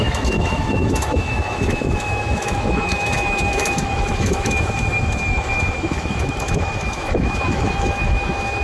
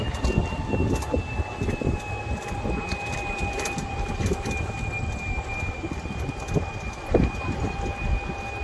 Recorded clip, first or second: second